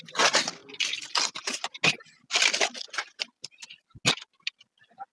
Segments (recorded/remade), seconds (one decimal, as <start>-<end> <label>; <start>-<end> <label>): 0.0-5.1 recorded